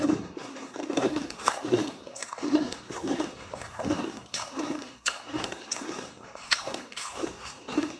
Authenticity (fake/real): fake